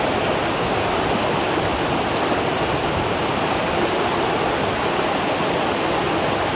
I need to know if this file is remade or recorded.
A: recorded